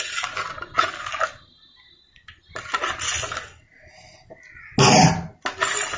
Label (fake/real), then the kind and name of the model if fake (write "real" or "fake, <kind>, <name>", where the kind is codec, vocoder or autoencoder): real